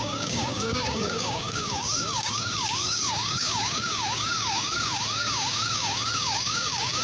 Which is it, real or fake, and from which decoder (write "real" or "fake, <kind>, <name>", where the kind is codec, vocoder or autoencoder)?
fake, codec, DAC